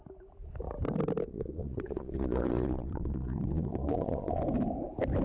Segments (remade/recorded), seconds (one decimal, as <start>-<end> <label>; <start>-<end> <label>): 0.0-1.3 recorded; 1.3-4.4 remade; 4.4-5.2 recorded